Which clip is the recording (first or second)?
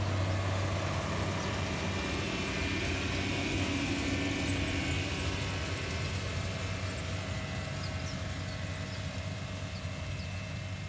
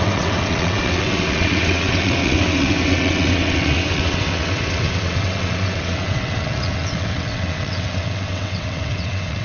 first